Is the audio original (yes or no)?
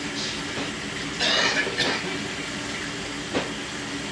yes